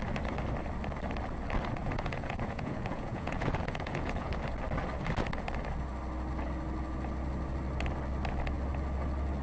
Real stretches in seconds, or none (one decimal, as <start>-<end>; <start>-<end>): 0.0-1.8; 4.3-9.4